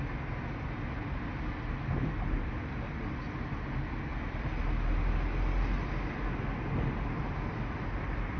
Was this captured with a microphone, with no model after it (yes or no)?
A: yes